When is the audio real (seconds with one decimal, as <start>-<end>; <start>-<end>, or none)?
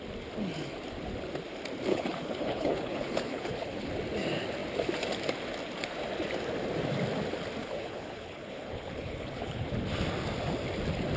0.0-1.9; 3.9-7.6; 9.7-11.2